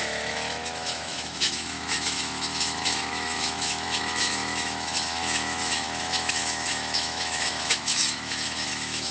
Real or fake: fake